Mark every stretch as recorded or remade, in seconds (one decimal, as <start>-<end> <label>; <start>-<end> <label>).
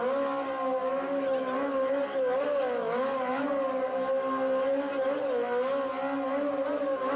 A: 0.0-7.2 recorded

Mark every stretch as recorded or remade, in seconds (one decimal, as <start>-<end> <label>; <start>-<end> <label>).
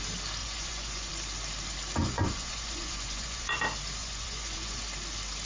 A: 0.0-0.4 recorded; 0.4-1.1 remade; 1.1-2.0 recorded; 2.0-3.6 remade; 3.6-4.0 recorded; 4.0-4.8 remade; 4.8-5.5 recorded